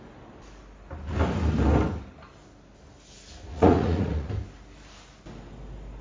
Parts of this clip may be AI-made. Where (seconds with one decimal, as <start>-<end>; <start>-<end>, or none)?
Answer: 3.5-4.3